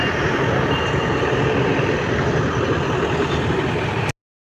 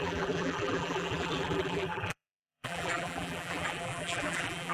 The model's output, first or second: second